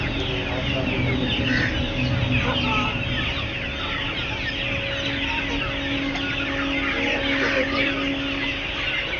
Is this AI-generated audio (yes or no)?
no